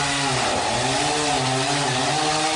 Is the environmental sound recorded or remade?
recorded